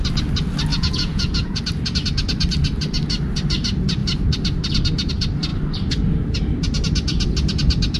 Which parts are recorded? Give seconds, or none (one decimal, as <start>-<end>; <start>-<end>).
0.0-0.7; 1.6-8.0